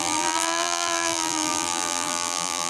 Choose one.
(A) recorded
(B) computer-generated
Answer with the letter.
B